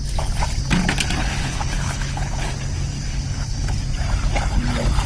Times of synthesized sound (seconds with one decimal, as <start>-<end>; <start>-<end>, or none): 1.2-2.5; 3.1-3.8